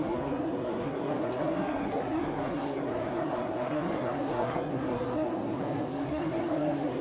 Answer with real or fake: fake